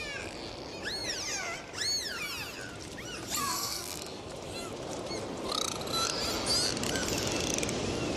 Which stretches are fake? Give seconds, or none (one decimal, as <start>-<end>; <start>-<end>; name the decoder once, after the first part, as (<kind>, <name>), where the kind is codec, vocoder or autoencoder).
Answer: 3.4-4.3 (codec, SNAC)